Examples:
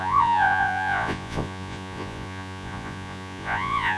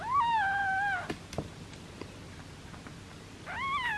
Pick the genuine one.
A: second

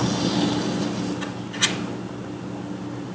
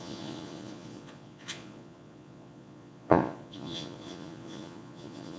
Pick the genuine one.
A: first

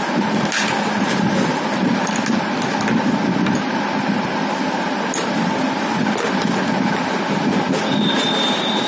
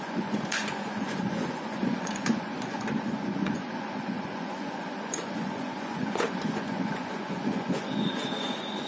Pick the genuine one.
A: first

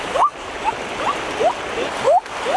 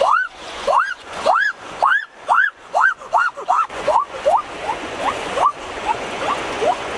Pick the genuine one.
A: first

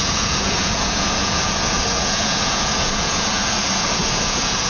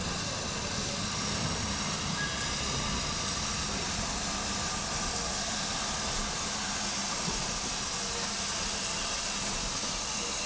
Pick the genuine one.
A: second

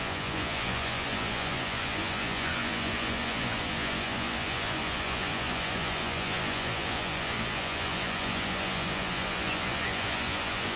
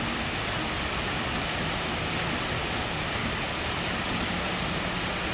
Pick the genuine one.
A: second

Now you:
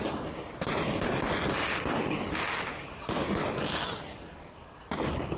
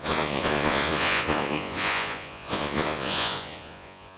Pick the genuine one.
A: first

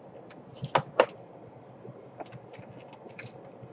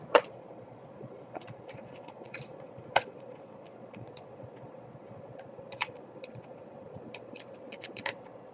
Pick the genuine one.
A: first